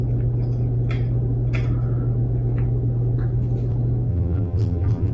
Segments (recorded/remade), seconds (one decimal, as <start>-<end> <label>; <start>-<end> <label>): 0.0-4.1 recorded; 4.1-5.1 remade